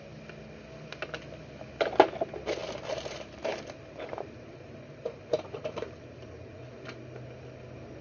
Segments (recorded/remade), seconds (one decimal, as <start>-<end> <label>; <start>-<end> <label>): 0.0-2.6 recorded; 2.6-6.6 remade; 6.6-8.0 recorded